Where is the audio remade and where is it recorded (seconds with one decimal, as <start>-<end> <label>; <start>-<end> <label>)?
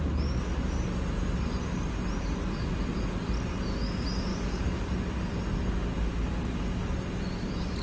0.0-4.3 recorded; 4.3-4.8 remade; 4.8-7.8 recorded